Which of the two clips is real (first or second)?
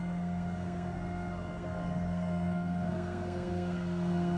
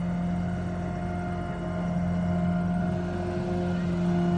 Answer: second